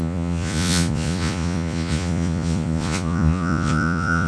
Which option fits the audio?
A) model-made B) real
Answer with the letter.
A